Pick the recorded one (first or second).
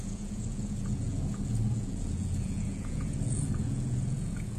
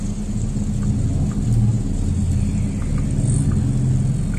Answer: second